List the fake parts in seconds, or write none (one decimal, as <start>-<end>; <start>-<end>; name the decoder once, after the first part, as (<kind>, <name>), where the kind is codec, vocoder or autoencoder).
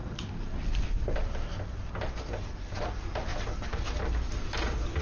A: 2.8-3.3 (vocoder, BigVGAN v2); 4.6-5.0